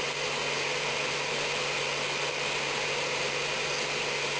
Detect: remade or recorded recorded